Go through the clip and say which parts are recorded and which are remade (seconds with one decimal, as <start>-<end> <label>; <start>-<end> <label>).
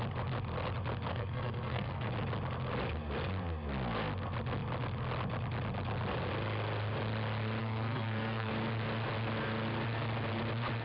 0.0-1.1 recorded; 1.1-2.1 remade; 2.1-7.6 recorded; 7.6-8.5 remade; 8.5-10.8 recorded